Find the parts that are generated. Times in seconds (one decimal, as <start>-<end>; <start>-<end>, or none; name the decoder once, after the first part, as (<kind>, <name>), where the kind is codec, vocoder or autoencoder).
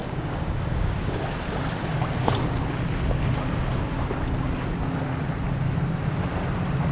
0.0-1.2 (codec, DAC)